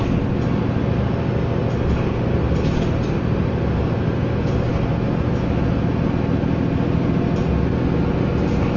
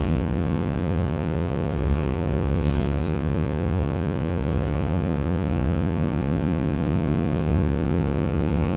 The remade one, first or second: second